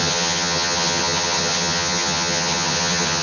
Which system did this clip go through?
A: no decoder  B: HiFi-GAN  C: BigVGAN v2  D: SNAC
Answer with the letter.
B